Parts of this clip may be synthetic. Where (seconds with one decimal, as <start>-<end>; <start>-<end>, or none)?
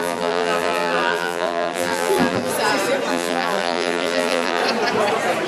0.0-2.5; 3.1-4.6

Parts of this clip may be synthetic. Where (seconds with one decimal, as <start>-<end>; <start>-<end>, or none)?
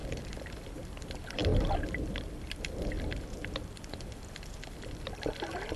none